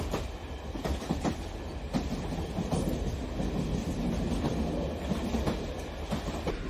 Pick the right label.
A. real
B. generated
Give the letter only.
A